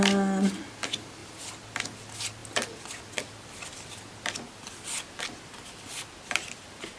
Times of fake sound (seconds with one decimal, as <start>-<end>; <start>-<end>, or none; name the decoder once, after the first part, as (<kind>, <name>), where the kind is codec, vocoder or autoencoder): none